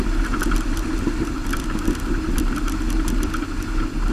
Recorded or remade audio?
recorded